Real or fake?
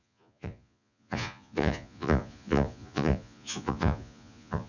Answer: fake